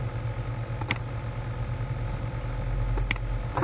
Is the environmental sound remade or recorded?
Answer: recorded